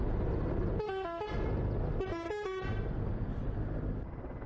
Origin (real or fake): real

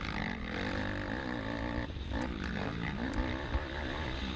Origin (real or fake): real